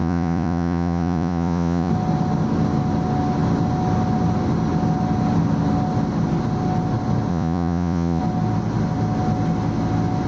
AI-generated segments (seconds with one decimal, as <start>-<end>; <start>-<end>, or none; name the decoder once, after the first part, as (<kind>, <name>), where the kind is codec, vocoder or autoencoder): 0.0-1.9 (vocoder, Vocos); 7.3-8.2